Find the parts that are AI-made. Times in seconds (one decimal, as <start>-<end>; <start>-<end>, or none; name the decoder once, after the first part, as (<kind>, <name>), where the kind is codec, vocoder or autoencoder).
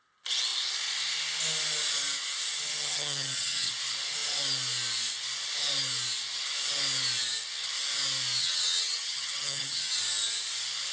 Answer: 2.7-3.7 (vocoder, HiFi-GAN); 8.4-10.0